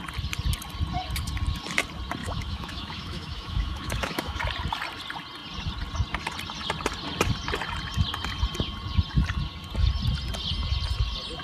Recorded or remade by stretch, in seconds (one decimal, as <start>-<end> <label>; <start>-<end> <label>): 0.0-2.2 recorded; 2.2-4.4 remade; 4.4-11.4 recorded

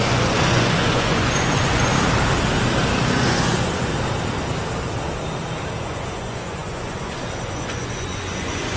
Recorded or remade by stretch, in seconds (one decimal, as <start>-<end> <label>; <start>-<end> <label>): 0.0-1.9 remade; 1.9-3.1 recorded; 3.1-3.9 remade; 3.9-5.8 recorded; 5.8-8.8 remade